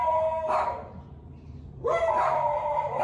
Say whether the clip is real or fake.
fake